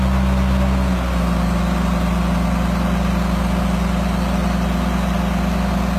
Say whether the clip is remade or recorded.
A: recorded